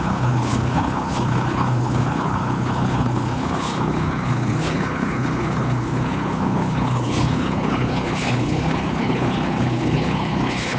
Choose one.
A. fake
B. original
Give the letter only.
A